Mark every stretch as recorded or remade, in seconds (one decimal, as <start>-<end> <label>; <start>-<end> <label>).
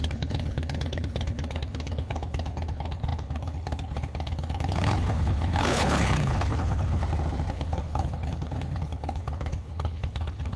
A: 0.0-7.0 remade; 7.0-7.5 recorded; 7.5-10.6 remade